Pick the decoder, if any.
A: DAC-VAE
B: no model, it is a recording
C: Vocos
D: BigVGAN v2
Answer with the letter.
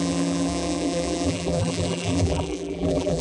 D